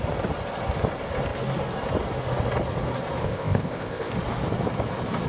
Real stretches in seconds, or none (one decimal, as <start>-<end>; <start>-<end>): 0.0-3.2; 4.1-5.3